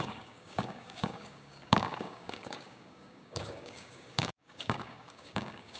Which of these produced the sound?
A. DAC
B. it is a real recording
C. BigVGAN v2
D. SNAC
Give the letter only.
A